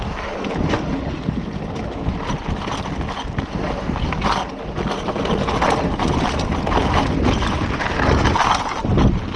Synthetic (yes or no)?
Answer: no